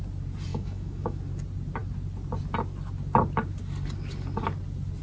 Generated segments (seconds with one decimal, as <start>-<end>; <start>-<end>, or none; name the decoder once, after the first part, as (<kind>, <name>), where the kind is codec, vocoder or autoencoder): 0.5-1.2 (autoencoder, DAC-VAE)